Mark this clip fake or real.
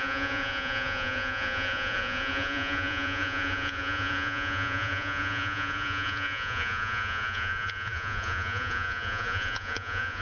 fake